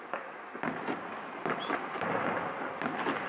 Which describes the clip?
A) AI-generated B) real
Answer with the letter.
B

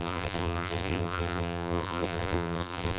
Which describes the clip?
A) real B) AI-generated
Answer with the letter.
B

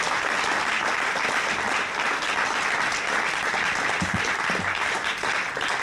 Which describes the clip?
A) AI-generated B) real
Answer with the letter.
B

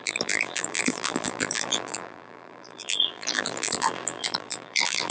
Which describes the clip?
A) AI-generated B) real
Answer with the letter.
A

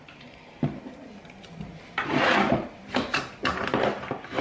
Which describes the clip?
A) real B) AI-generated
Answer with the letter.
B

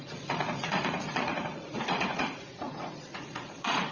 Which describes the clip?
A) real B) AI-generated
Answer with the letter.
B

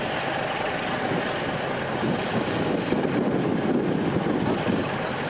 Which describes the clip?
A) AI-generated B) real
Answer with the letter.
B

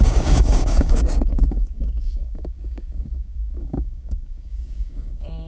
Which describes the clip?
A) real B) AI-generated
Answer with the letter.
B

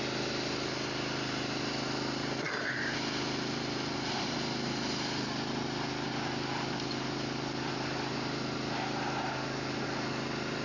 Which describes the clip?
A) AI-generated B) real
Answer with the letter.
B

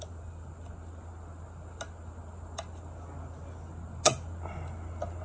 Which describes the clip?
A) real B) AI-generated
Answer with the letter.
A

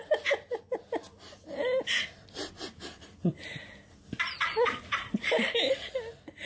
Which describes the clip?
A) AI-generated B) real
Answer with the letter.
B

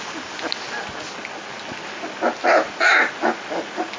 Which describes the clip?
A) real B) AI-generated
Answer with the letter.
A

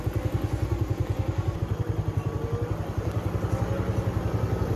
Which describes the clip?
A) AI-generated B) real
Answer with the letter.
B